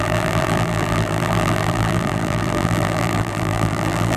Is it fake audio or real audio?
fake